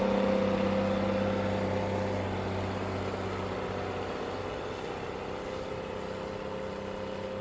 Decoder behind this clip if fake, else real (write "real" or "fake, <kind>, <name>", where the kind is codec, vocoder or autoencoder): real